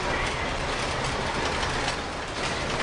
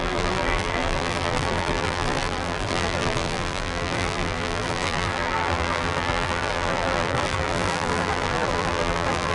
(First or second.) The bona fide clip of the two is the first